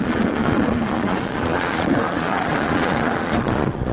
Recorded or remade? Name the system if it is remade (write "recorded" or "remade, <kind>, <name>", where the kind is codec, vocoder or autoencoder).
remade, vocoder, Vocos